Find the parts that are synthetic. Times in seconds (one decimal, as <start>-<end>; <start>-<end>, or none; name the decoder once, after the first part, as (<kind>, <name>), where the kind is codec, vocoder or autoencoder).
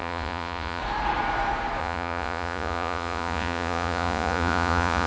0.0-0.8 (vocoder, Vocos); 1.8-5.1